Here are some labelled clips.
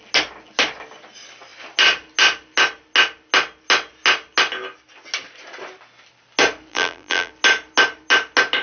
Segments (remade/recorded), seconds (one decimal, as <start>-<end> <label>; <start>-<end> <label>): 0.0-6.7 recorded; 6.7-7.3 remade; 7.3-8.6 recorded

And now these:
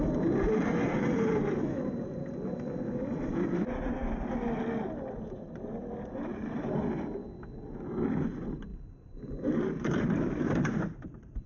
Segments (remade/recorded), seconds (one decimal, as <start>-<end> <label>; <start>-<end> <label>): 0.0-4.0 remade; 4.0-4.8 recorded; 4.8-7.2 remade; 7.2-8.1 recorded; 8.1-11.5 remade

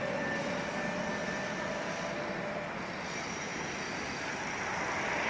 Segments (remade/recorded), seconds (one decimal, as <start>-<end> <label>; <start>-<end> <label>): 0.0-1.2 recorded; 1.2-2.6 remade; 2.6-5.3 recorded

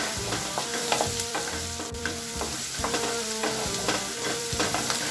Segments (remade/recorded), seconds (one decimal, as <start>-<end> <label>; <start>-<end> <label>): 0.0-3.4 remade; 3.4-4.4 recorded; 4.4-5.1 remade

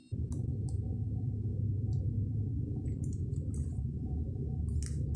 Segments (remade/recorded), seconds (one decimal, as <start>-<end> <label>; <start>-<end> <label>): 0.0-1.5 recorded; 1.5-4.6 remade; 4.6-5.2 recorded

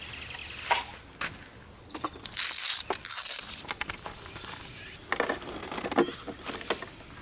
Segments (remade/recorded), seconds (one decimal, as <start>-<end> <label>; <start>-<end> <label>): 0.0-7.2 recorded

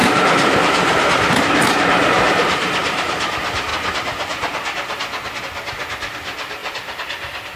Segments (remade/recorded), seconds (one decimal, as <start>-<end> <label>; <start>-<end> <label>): 0.0-1.3 remade; 1.3-2.8 recorded; 2.8-3.3 remade; 3.3-7.6 recorded